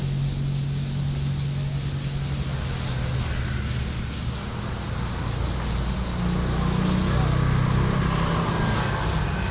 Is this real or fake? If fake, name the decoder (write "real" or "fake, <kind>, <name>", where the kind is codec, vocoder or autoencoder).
real